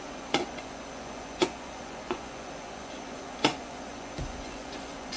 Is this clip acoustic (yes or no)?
no